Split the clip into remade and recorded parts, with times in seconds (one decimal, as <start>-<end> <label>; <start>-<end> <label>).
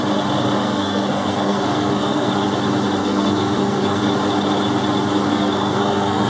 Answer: 0.0-0.6 recorded; 0.6-2.3 remade; 2.3-3.0 recorded; 3.0-4.0 remade; 4.0-5.3 recorded; 5.3-6.3 remade